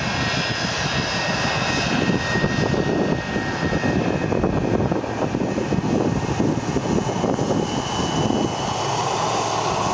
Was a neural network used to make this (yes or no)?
no